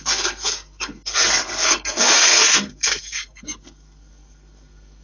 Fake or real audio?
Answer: fake